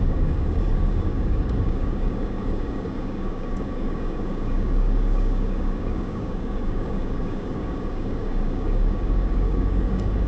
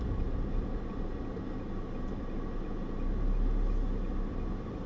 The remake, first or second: first